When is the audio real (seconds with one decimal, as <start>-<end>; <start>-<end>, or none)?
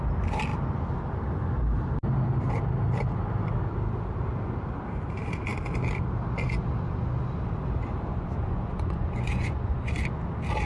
0.0-8.1; 9.9-10.7